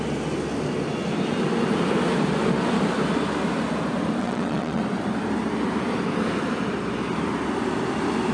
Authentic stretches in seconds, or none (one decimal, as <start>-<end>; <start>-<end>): 0.0-4.2; 4.8-8.3